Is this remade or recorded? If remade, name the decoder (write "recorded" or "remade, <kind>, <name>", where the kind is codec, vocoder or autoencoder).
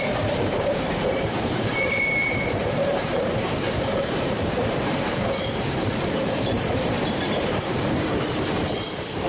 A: remade, vocoder, BigVGAN v2